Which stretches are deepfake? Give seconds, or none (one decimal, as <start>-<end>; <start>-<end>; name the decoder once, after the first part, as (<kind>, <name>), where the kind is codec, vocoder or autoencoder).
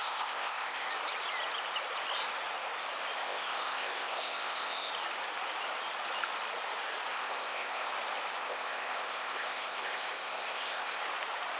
0.0-0.9 (codec, ZipCodec); 3.2-4.9; 7.1-7.9; 8.4-11.0